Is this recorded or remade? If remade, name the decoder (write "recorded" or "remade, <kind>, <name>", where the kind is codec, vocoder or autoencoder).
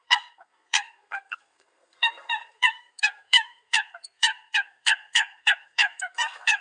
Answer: remade, codec, SNAC